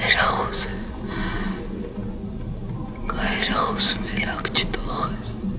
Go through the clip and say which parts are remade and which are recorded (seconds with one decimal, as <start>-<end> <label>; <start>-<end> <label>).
0.0-5.6 recorded